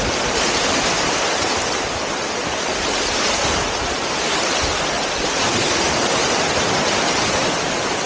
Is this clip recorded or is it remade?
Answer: recorded